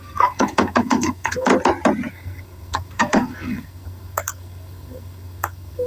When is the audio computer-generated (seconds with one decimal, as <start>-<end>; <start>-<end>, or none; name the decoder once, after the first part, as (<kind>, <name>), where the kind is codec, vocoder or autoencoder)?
0.0-1.5 (codec, SNAC); 2.1-5.9